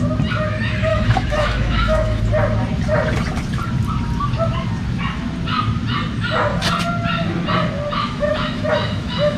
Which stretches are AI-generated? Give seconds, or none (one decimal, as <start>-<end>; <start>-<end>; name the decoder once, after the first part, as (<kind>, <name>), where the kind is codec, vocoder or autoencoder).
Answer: 0.9-2.2 (autoencoder, DAC-VAE); 8.0-9.4